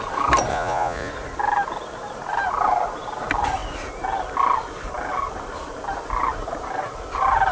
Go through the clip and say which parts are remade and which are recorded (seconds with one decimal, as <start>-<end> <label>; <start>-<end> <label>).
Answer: 0.0-0.5 recorded; 0.5-1.1 remade; 1.1-7.5 recorded